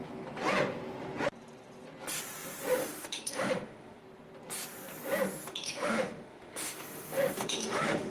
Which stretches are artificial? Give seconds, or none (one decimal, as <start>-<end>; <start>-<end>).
2.8-4.0; 5.5-8.1